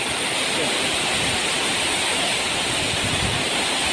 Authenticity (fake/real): real